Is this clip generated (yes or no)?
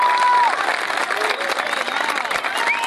no